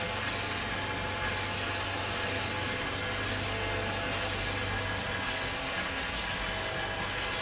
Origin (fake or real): real